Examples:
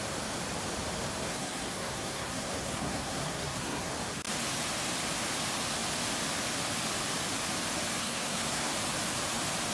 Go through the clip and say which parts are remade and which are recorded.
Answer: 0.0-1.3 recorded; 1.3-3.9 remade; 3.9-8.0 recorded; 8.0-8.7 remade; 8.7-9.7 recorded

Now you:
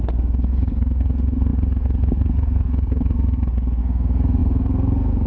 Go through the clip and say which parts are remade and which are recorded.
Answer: 0.0-5.3 remade

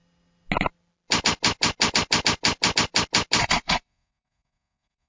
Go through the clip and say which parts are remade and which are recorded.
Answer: 0.0-3.4 recorded; 3.4-5.1 remade

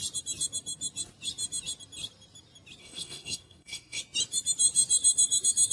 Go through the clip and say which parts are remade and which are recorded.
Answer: 0.0-2.8 recorded; 2.8-4.0 remade; 4.0-5.7 recorded